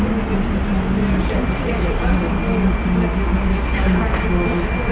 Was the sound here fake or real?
real